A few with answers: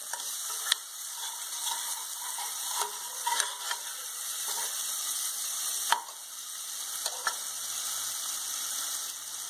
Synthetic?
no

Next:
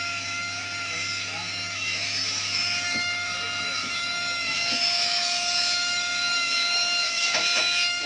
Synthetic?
yes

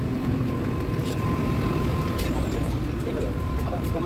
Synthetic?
yes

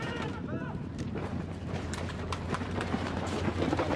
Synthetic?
yes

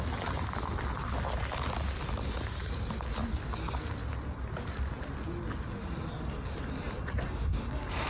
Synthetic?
no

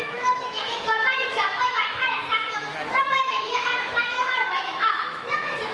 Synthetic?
yes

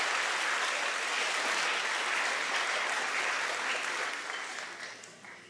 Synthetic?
no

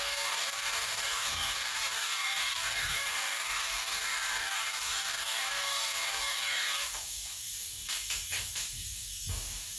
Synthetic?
yes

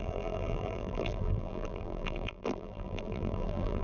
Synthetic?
yes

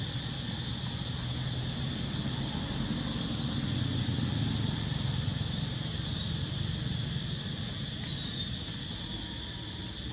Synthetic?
no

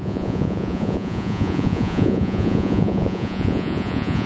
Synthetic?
yes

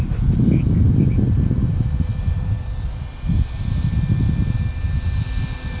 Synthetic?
no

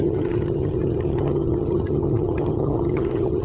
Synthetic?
yes